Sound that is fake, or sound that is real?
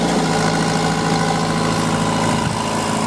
real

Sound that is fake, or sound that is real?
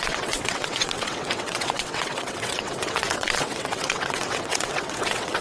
fake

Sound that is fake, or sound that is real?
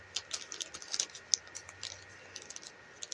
real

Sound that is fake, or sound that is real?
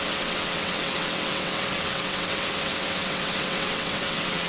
fake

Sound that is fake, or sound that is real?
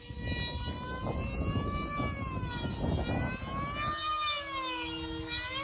real